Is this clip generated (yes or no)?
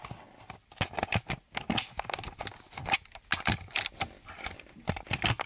no